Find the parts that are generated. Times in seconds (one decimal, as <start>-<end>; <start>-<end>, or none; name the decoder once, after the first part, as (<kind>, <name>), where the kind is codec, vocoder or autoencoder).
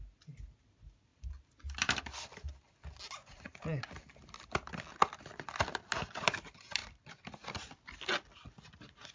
3.2-4.0 (vocoder, Vocos)